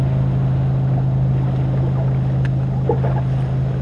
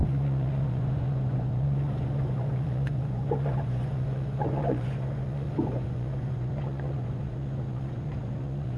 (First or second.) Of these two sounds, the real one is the first